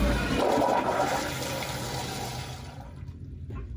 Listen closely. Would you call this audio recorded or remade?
recorded